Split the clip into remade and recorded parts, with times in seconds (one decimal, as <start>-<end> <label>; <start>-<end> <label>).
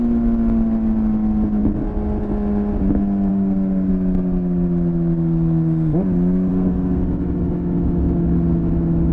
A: 0.0-3.3 recorded; 3.3-3.9 remade; 3.9-6.5 recorded; 6.5-7.0 remade; 7.0-9.1 recorded